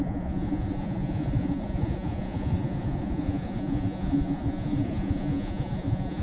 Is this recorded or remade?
remade